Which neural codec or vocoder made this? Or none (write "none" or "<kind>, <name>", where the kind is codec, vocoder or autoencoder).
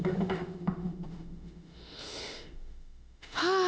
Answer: autoencoder, DAC-VAE